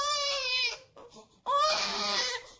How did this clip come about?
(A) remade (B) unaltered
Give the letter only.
A